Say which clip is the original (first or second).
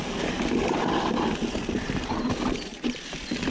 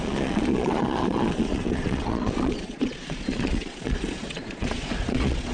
first